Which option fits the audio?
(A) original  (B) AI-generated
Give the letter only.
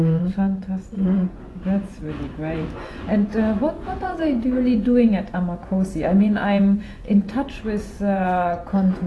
B